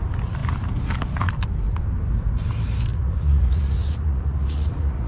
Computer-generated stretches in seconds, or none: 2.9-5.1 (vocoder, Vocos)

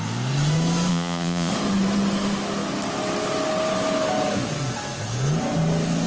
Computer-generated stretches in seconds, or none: 0.9-1.5 (vocoder, Vocos)

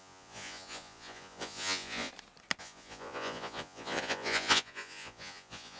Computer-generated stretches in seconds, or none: 0.0-2.1 (vocoder, Vocos); 2.6-5.8

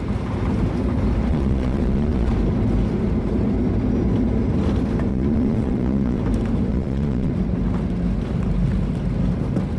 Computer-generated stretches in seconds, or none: 1.3-2.3 (vocoder, Vocos); 5.1-6.2; 6.7-7.3